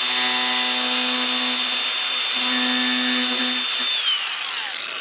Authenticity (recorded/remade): recorded